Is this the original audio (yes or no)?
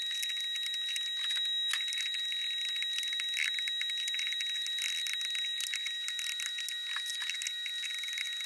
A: yes